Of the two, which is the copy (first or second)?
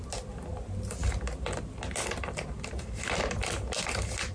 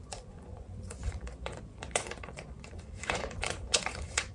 second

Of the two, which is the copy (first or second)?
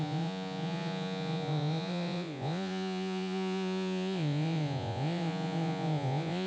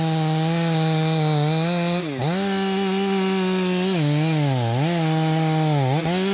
first